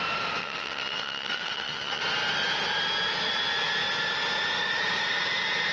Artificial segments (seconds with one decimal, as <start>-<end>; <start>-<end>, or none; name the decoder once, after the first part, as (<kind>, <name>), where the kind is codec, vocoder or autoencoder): 0.4-2.0 (vocoder, WaveNeXt)

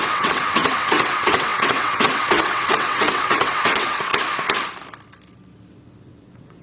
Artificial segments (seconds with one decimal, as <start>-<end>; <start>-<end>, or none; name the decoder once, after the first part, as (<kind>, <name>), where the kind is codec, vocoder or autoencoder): 0.0-4.1 (vocoder, WaveNeXt); 6.0-6.6